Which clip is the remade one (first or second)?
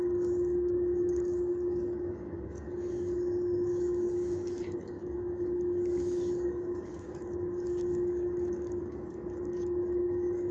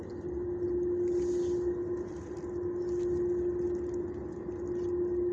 first